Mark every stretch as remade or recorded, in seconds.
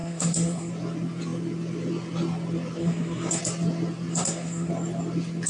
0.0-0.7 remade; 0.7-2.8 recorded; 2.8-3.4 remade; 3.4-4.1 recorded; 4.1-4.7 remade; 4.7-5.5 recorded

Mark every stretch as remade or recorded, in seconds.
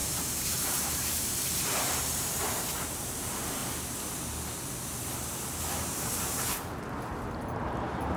0.0-3.6 remade; 3.6-5.1 recorded; 5.1-7.1 remade; 7.1-7.6 recorded; 7.6-8.2 remade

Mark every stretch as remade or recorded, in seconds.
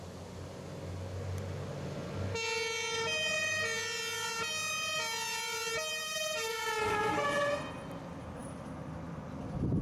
0.0-5.9 recorded; 5.9-7.4 remade; 7.4-9.8 recorded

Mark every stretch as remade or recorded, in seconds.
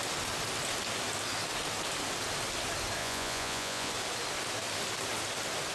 0.0-3.0 recorded; 3.0-3.9 remade; 3.9-5.7 recorded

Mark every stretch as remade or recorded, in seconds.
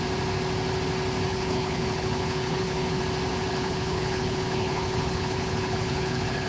0.0-1.3 recorded; 1.3-3.0 remade; 3.0-3.5 recorded; 3.5-6.5 remade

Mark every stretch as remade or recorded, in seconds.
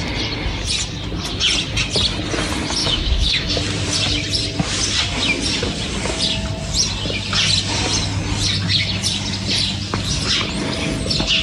0.0-2.8 recorded; 2.8-3.5 remade; 3.5-11.4 recorded